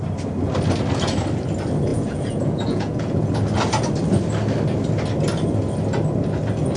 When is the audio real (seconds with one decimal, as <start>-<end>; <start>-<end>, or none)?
0.0-1.9; 3.3-6.8